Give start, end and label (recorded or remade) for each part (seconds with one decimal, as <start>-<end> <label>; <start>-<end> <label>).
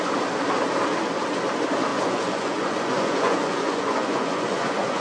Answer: 0.0-1.9 recorded; 1.9-5.0 remade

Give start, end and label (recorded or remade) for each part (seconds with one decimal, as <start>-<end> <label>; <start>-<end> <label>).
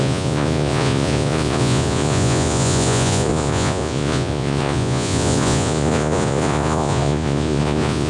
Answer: 0.0-8.1 remade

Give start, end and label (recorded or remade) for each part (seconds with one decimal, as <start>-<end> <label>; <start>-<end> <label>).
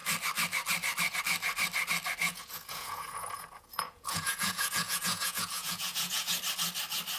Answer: 0.0-2.2 recorded; 2.2-6.4 remade; 6.4-7.2 recorded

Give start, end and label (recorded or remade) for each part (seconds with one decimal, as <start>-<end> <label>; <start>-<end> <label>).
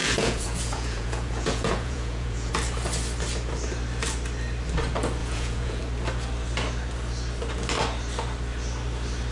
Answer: 0.0-2.5 remade; 2.5-5.2 recorded; 5.2-5.8 remade; 5.8-9.3 recorded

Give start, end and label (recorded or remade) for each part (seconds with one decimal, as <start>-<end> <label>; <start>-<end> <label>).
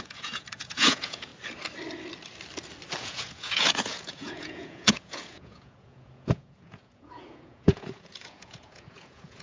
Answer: 0.0-1.3 remade; 1.3-3.0 recorded; 3.0-9.4 remade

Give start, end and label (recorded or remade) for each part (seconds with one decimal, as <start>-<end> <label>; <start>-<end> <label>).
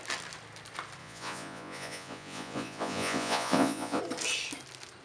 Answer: 0.0-1.0 recorded; 1.0-4.0 remade; 4.0-5.0 recorded